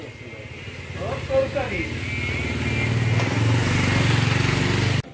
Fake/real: real